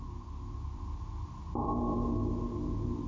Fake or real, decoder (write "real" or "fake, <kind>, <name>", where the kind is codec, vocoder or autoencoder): real